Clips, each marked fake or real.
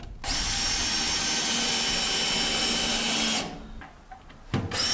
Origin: real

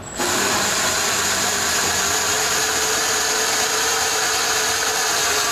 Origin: real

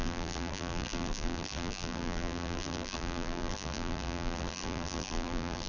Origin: fake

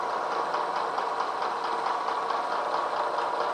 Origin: real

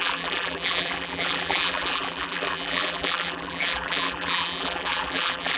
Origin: fake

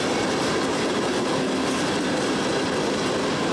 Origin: real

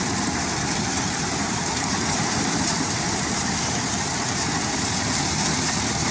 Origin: fake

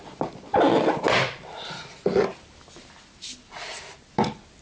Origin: real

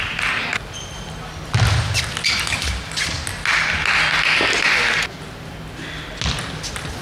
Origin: real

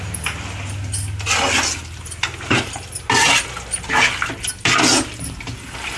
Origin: real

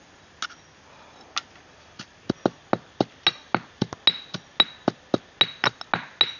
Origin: real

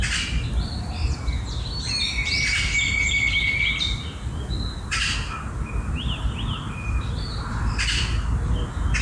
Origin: real